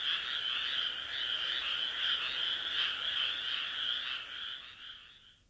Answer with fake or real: real